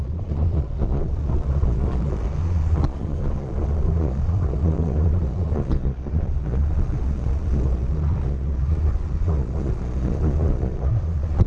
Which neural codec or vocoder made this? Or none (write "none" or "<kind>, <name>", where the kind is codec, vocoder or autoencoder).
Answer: vocoder, Vocos